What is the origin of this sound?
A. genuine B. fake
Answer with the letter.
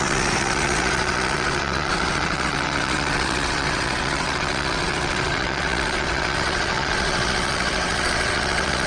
B